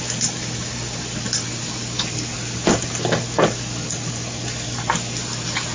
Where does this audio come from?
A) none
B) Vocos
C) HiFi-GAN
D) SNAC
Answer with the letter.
A